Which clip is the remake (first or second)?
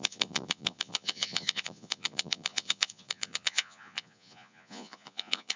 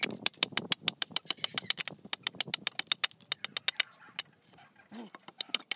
first